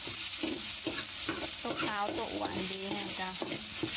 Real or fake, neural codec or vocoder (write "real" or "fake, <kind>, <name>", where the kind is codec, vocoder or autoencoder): real